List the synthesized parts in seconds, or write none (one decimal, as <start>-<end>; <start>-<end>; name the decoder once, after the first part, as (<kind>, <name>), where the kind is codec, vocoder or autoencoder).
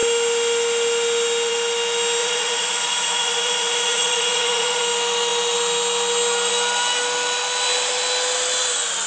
2.2-4.8 (vocoder, Vocos)